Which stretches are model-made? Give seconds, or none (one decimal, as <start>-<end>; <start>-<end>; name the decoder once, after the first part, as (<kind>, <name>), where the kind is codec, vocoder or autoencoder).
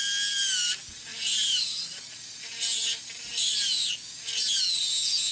none